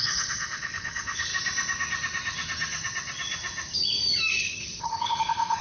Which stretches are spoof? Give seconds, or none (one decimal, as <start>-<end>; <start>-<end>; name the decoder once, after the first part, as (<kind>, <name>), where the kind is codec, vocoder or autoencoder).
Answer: 0.0-1.3 (codec, HILCodec); 4.4-5.6